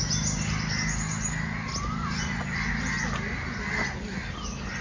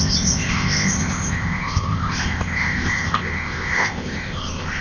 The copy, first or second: second